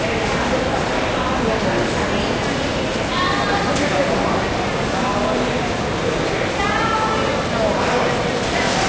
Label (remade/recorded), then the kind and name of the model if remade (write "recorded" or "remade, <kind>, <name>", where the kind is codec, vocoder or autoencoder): recorded